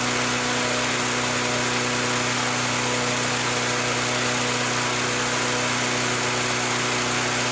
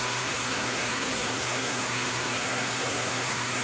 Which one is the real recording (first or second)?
first